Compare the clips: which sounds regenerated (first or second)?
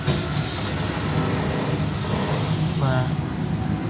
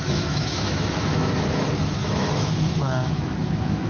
second